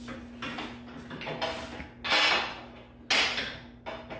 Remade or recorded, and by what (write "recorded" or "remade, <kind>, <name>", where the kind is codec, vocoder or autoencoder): recorded